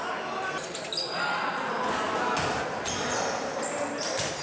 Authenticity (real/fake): real